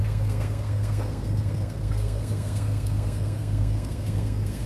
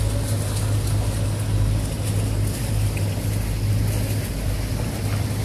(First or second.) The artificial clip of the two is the first